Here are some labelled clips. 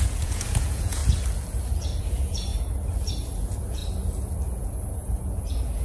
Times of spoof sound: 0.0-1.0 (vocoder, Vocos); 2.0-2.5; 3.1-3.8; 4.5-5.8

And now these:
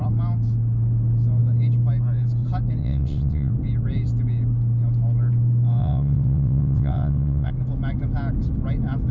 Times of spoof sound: 2.8-3.5 (vocoder, WaveNeXt); 5.8-7.5

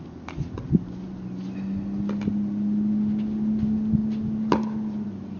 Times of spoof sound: none

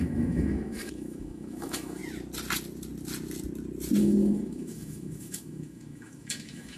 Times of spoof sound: 0.0-2.0 (autoencoder, DAC-VAE); 4.0-6.8

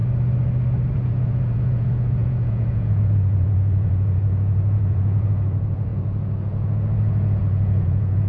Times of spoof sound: 0.9-8.3 (vocoder, Vocos)

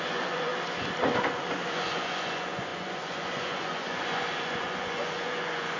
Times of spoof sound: 0.0-0.5 (vocoder, Vocos); 1.7-5.8

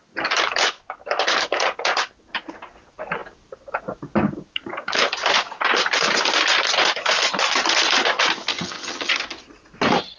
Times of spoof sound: 8.5-9.1 (vocoder, HiFi-GAN)

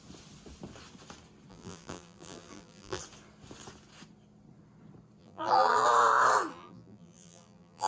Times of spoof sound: 1.5-3.0 (vocoder, BigVGAN v2); 5.2-5.9; 6.5-7.9